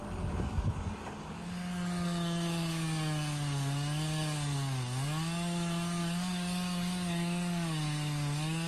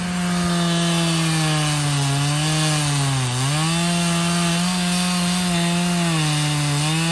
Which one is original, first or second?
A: second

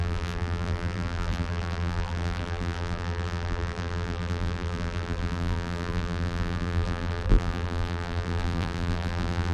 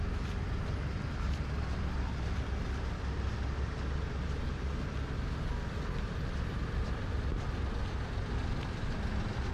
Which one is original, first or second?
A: second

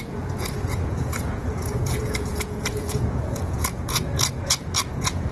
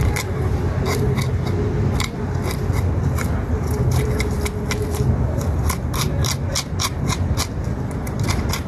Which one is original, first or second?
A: second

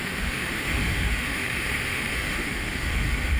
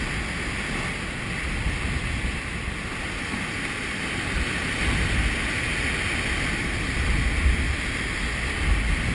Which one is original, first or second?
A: second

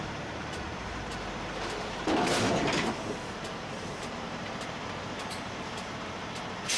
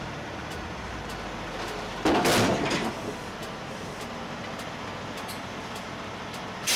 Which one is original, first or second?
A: second